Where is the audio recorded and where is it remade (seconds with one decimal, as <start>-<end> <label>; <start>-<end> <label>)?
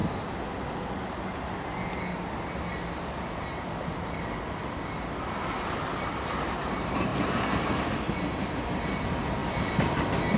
0.0-9.4 recorded; 9.4-10.0 remade; 10.0-10.4 recorded